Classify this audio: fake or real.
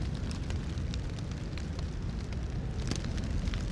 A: real